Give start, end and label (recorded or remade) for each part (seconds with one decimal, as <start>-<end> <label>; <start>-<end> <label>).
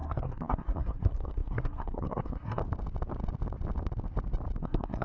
0.0-2.6 remade; 2.6-4.6 recorded; 4.6-5.0 remade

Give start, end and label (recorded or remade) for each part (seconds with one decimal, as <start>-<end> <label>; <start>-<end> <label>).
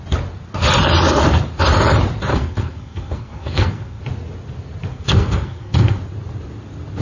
0.0-2.3 recorded; 2.3-4.0 remade; 4.0-4.9 recorded; 4.9-6.0 remade; 6.0-7.0 recorded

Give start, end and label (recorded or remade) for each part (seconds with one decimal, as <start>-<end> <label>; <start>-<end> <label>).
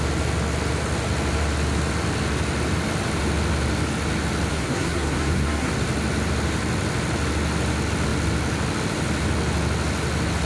0.0-4.5 recorded; 4.5-5.7 remade; 5.7-10.5 recorded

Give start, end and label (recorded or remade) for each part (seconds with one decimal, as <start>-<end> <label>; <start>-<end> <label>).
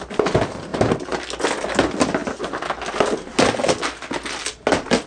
0.0-5.1 recorded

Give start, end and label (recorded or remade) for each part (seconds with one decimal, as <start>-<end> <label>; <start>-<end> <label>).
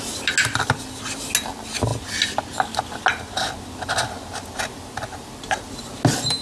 0.0-6.4 recorded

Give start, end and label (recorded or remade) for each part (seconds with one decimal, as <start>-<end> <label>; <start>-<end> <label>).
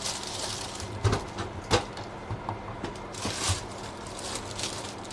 0.0-5.1 recorded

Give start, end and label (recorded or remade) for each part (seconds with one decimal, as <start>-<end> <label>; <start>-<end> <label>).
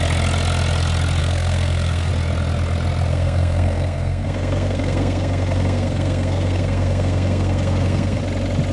0.0-1.2 recorded; 1.2-2.1 remade; 2.1-3.1 recorded; 3.1-8.2 remade; 8.2-8.7 recorded